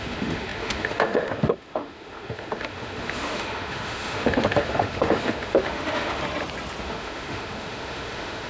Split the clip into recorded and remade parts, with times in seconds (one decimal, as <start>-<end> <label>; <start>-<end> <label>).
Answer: 0.0-6.2 remade; 6.2-6.8 recorded; 6.8-8.5 remade